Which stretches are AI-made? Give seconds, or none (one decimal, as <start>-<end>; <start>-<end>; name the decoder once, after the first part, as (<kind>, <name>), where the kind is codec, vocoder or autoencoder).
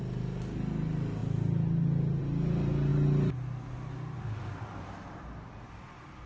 none